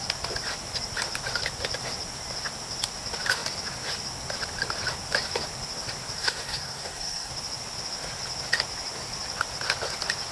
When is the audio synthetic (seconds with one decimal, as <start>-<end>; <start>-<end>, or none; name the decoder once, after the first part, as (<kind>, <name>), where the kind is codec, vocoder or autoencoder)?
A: 6.2-7.3 (codec, SNAC)